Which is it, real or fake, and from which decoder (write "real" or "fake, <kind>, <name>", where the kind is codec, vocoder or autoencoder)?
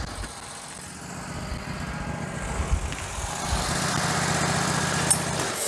real